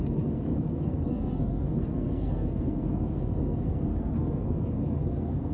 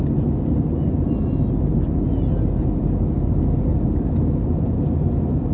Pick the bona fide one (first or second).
second